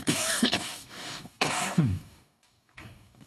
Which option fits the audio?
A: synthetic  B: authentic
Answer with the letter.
A